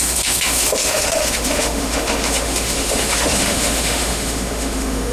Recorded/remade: remade